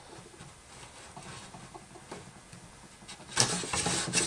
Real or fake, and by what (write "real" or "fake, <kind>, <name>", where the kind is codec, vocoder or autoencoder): real